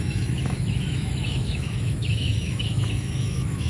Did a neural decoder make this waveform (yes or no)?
yes